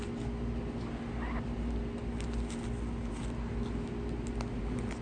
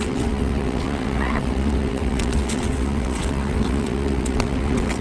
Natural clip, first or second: first